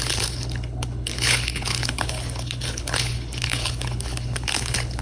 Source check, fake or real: fake